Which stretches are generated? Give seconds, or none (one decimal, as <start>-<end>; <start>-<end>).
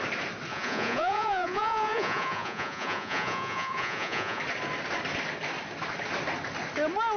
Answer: 0.5-4.4